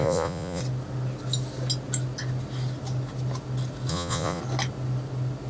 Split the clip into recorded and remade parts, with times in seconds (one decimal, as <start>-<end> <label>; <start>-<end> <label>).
0.0-0.6 remade; 0.6-3.9 recorded; 3.9-4.4 remade; 4.4-5.5 recorded